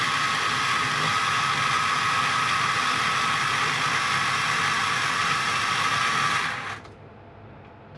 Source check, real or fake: real